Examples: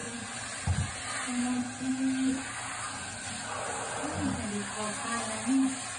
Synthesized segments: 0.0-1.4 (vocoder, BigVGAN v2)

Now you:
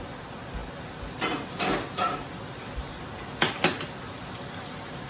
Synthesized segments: none